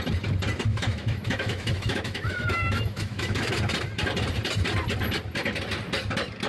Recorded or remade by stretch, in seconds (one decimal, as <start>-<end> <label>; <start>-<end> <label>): 0.0-0.7 recorded; 0.7-3.5 remade; 3.5-6.5 recorded